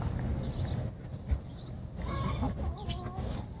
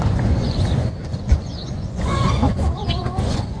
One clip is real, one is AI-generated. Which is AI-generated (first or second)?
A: second